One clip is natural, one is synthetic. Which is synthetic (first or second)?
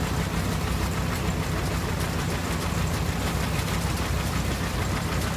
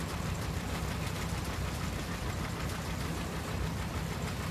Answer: second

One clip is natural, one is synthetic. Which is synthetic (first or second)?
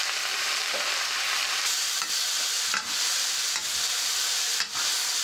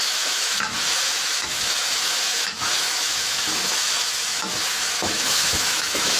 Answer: second